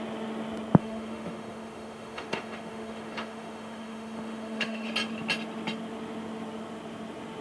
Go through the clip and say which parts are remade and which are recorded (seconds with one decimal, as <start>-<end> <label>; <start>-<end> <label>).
0.0-0.8 recorded; 0.8-4.9 remade; 4.9-7.4 recorded